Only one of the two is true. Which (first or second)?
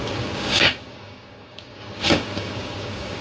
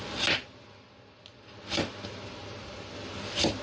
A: second